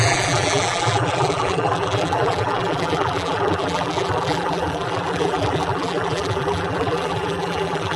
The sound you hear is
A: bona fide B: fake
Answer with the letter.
B